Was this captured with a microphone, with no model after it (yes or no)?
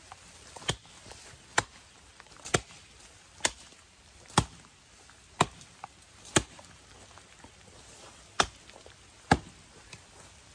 yes